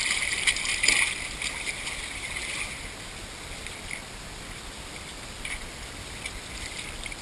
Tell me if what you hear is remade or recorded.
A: recorded